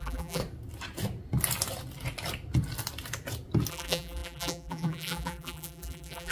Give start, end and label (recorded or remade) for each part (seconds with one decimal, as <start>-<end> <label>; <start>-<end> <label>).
0.0-0.4 remade; 0.4-3.7 recorded; 3.7-6.3 remade